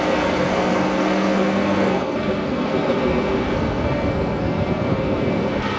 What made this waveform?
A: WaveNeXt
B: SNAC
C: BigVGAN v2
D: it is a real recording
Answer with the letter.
B